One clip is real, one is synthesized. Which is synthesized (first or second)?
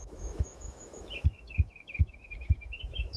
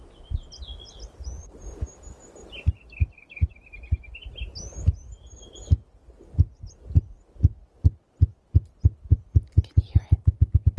first